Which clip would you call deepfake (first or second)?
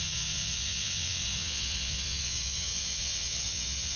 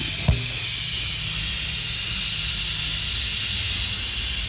first